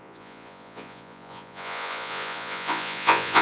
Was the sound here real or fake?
fake